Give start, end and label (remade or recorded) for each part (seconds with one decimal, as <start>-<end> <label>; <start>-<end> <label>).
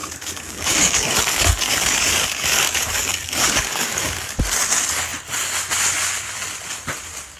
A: 0.0-4.4 remade; 4.4-7.4 recorded